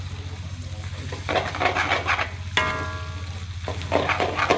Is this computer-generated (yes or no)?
no